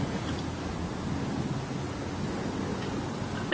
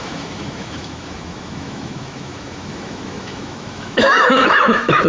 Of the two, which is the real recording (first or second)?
first